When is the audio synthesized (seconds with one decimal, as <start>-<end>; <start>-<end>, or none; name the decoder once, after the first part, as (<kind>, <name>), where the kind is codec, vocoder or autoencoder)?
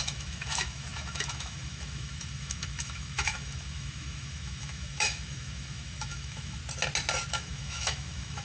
0.0-6.6 (autoencoder, DAC-VAE); 7.3-8.4